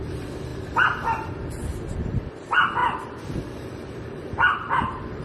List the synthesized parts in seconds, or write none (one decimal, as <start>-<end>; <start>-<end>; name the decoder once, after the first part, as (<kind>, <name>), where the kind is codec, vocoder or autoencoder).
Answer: 0.0-5.2 (vocoder, BigVGAN v2)